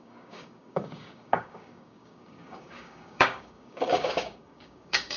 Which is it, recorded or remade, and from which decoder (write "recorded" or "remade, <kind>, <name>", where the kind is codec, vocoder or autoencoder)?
remade, codec, DAC